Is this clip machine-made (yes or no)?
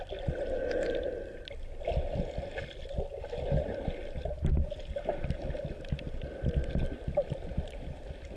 no